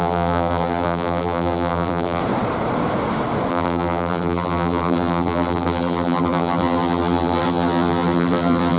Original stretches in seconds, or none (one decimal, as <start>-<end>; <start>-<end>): 2.2-3.5